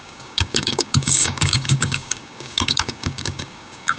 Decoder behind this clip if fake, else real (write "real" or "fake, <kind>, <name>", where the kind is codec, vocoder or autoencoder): fake, codec, DAC